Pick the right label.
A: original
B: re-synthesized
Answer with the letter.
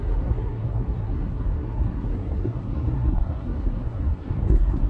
B